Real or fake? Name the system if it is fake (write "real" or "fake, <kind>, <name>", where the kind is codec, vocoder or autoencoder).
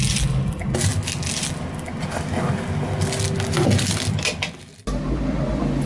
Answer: real